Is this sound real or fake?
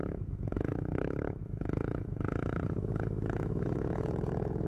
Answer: fake